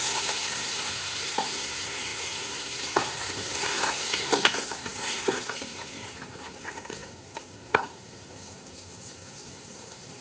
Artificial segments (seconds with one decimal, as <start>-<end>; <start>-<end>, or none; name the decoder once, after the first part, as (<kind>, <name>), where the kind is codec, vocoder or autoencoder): 0.0-10.2 (codec, SNAC)